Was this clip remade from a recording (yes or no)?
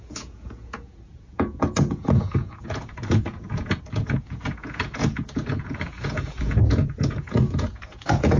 yes